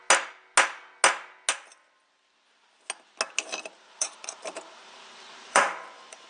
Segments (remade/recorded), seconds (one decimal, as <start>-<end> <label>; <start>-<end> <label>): 0.0-3.8 recorded; 3.8-6.3 remade